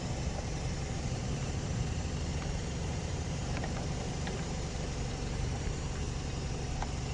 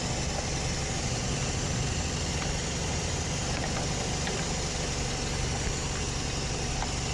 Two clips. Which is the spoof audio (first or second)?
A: first